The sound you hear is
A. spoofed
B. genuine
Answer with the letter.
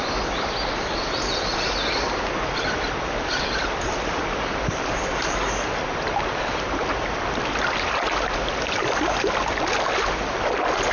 B